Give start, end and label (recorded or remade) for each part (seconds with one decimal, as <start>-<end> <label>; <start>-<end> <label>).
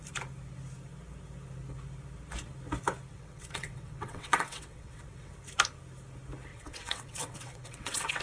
0.0-3.1 recorded; 3.1-5.3 remade; 5.3-6.5 recorded; 6.5-8.2 remade